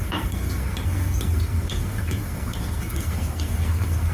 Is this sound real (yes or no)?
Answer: no